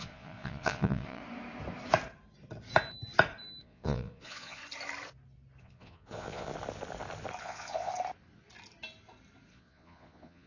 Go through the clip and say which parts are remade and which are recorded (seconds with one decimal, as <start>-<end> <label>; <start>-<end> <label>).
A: 0.0-1.2 remade; 1.2-3.6 recorded; 3.6-4.6 remade; 4.6-5.6 recorded; 5.6-6.5 remade; 6.5-7.4 recorded; 7.4-7.9 remade; 7.9-9.5 recorded; 9.5-10.5 remade